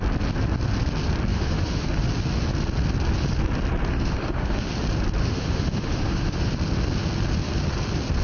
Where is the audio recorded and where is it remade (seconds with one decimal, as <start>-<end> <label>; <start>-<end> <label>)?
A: 0.0-1.3 recorded; 1.3-2.0 remade; 2.0-3.9 recorded; 3.9-4.6 remade; 4.6-5.2 recorded; 5.2-6.5 remade; 6.5-8.2 recorded